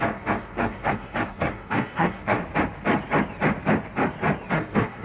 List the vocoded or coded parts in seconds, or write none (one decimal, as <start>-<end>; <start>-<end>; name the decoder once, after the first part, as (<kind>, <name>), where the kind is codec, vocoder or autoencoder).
0.0-2.4 (codec, SNAC); 4.5-5.0